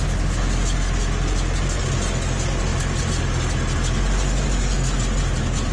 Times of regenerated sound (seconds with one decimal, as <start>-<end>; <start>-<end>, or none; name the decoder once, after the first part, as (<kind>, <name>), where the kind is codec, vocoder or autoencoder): none